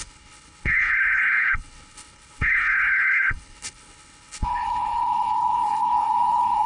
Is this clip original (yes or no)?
no